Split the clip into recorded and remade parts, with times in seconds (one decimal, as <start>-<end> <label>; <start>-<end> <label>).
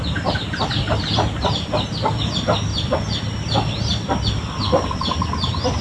0.0-5.8 recorded